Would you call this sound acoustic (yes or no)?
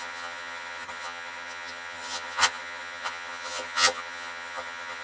no